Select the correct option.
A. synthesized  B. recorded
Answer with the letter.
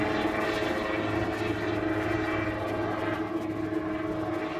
B